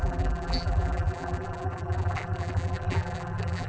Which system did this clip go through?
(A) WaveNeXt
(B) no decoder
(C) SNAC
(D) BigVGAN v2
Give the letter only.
D